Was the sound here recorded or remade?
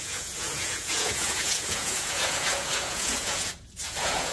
remade